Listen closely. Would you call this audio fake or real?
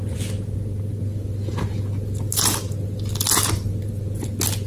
real